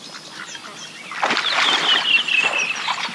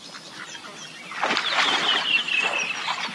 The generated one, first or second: second